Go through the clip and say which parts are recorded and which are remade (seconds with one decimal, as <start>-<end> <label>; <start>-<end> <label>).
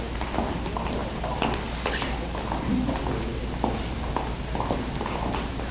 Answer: 0.0-5.7 recorded